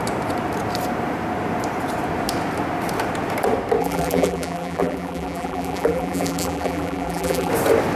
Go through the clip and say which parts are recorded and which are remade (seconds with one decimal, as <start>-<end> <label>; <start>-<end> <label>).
0.0-3.8 recorded; 3.8-7.5 remade; 7.5-8.0 recorded